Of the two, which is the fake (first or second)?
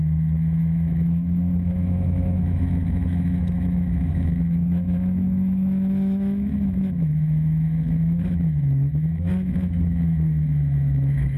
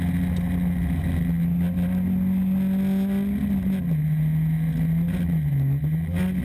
first